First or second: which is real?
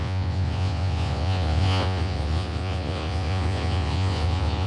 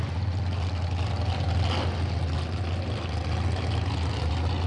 second